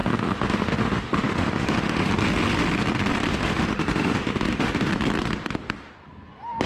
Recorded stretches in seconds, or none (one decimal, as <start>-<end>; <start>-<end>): 2.1-3.3; 4.9-6.7